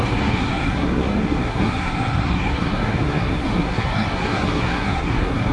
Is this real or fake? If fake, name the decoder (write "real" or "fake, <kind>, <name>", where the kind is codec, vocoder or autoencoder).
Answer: fake, codec, SNAC